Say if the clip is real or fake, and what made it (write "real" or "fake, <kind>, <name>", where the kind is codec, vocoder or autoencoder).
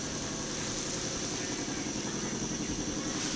real